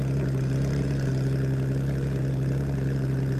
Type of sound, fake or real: real